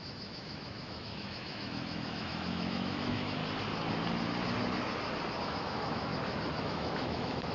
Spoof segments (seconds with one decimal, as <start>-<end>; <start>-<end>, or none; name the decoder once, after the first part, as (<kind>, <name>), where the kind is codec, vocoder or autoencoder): 0.0-3.4 (autoencoder, DAC-VAE); 5.4-6.1; 6.6-7.5